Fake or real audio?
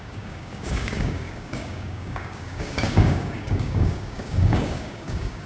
fake